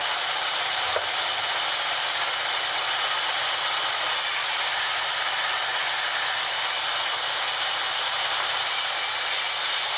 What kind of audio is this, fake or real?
real